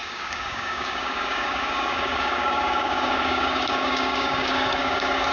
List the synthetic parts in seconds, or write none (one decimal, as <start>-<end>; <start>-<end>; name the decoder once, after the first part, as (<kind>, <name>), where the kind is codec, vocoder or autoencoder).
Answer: 0.0-5.3 (codec, DAC)